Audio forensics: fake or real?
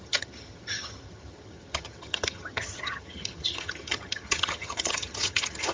fake